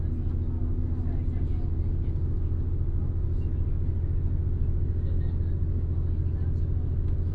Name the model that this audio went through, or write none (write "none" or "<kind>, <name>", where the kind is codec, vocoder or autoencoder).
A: none